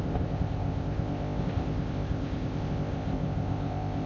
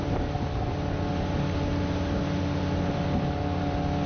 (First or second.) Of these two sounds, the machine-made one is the first